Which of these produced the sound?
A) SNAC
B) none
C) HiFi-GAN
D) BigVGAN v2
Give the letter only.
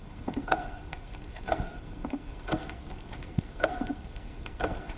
A